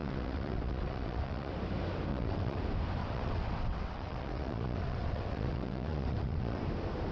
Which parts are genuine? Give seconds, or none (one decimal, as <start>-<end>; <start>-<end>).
1.5-2.1; 2.6-3.0; 6.6-7.1